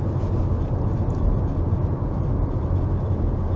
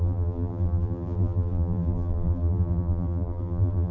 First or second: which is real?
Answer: first